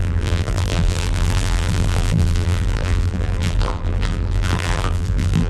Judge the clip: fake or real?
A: fake